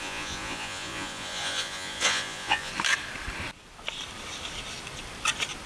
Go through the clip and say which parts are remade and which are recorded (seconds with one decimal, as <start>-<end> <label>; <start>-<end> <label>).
0.0-2.7 remade; 2.7-5.7 recorded

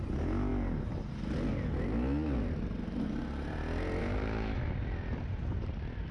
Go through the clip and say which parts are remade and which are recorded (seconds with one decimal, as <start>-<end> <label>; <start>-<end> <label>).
0.0-4.0 recorded; 4.0-4.7 remade; 4.7-6.1 recorded

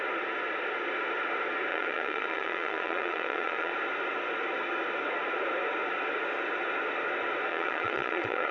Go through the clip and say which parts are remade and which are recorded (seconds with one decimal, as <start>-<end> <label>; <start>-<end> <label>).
0.0-1.7 recorded; 1.7-3.7 remade; 3.7-7.5 recorded; 7.5-8.5 remade